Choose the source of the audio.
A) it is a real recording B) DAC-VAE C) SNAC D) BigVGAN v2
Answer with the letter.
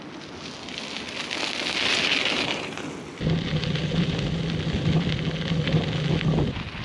A